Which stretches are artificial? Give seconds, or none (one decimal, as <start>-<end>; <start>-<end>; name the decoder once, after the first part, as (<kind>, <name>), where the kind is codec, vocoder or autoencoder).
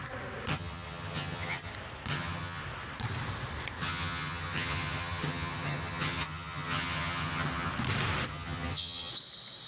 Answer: 0.5-1.7 (vocoder, HiFi-GAN); 2.1-2.6; 3.8-7.7; 8.3-9.1